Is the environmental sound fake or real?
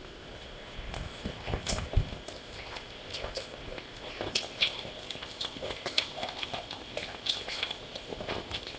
fake